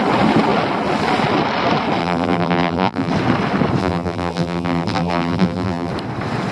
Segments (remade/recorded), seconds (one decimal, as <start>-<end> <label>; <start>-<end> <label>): 0.0-2.0 recorded; 2.0-3.1 remade; 3.1-3.8 recorded; 3.8-5.9 remade; 5.9-6.5 recorded